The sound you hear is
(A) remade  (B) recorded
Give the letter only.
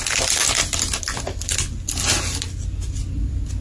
B